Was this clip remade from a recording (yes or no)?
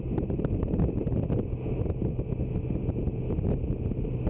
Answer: no